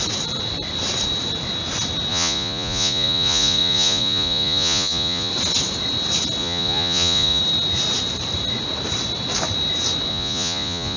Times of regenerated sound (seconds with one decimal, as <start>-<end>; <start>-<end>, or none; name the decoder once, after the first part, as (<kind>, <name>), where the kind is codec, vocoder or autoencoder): 2.1-5.3 (vocoder, Vocos); 6.4-7.4; 10.1-11.0